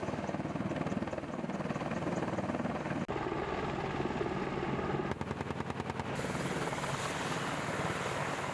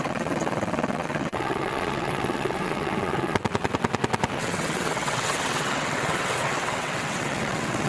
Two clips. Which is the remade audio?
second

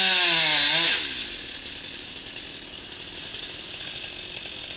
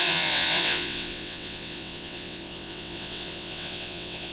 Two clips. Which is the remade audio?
second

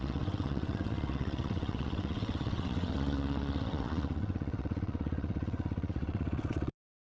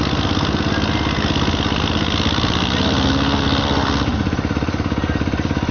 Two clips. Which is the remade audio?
first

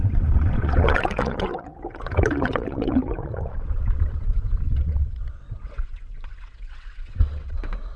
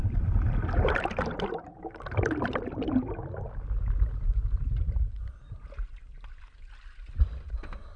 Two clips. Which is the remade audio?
first